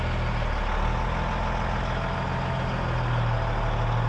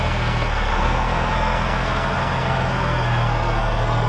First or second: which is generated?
second